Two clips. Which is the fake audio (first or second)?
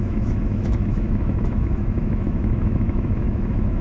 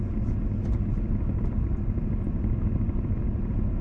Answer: first